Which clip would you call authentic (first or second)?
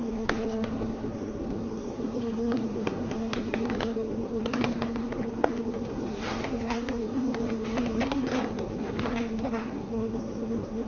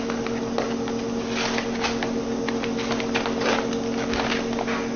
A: second